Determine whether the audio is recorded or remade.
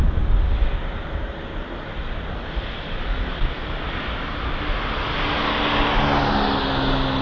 recorded